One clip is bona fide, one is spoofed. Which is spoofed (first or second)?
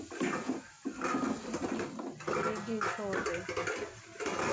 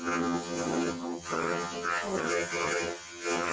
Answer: second